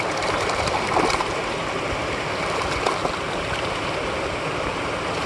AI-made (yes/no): no